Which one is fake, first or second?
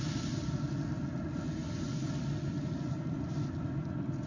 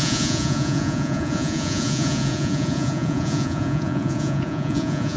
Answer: second